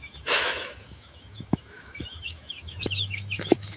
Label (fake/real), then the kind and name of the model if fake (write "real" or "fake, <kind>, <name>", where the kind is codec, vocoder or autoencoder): fake, autoencoder, DAC-VAE